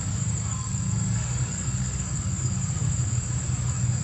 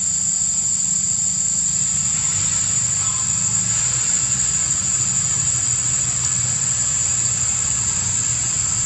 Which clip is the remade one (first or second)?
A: first